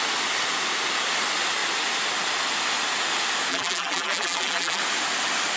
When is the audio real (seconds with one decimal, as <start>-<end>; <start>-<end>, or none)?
0.0-3.5; 4.8-5.6